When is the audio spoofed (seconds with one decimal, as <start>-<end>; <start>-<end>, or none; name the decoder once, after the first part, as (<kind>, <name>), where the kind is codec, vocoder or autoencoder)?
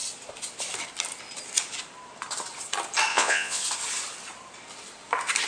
3.1-3.6 (vocoder, Vocos)